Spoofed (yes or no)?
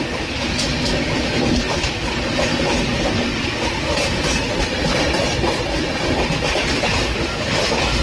no